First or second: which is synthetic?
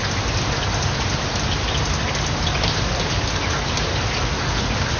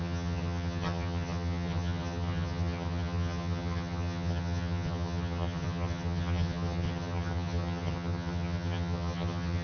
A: second